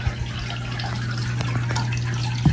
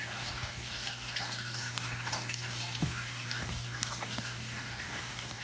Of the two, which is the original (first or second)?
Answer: first